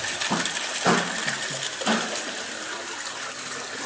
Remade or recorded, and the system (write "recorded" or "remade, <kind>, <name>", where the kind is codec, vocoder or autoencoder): recorded